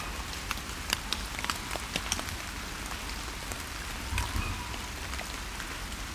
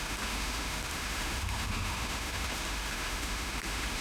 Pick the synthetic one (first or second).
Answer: second